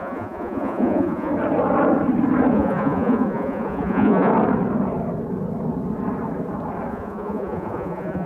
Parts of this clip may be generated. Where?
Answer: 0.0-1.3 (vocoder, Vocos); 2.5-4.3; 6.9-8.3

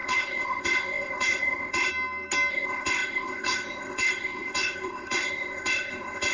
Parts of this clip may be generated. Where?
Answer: 0.0-1.9 (codec, ZipCodec); 2.5-6.3

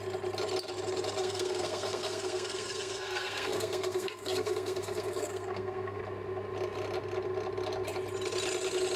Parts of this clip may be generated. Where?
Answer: 1.2-6.0 (codec, SNAC)

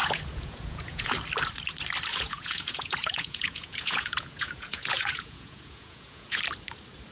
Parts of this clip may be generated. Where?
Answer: 0.0-1.1 (vocoder, Vocos); 2.1-6.4

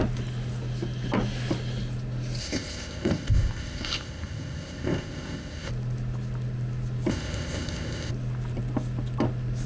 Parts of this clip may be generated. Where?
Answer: 2.4-5.7 (codec, ZipCodec); 7.1-8.1

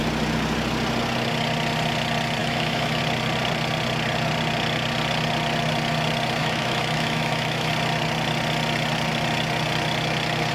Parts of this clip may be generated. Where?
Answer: 2.4-3.0 (autoencoder, DAC-VAE); 6.4-7.7